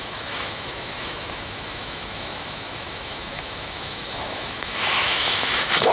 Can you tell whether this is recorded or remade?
remade